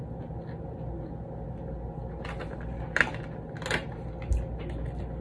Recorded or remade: recorded